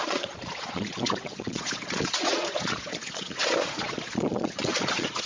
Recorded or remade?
remade